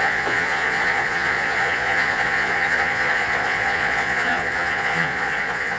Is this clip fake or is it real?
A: fake